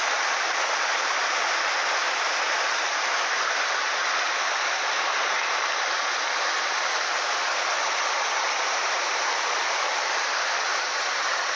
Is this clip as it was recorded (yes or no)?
yes